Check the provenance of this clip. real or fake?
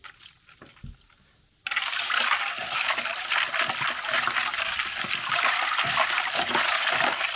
real